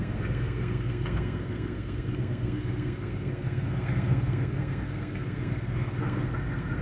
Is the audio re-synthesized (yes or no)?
yes